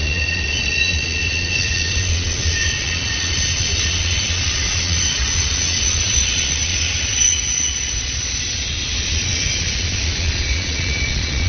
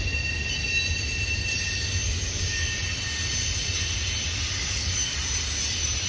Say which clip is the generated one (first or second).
first